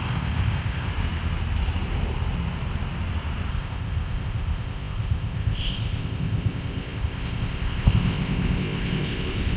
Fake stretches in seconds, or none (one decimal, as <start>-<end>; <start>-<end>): 0.0-0.9; 3.5-9.6